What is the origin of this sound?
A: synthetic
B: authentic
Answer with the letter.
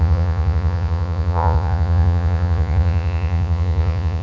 A